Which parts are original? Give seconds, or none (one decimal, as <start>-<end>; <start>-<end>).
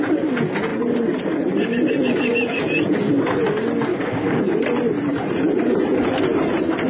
0.0-3.9; 4.4-6.9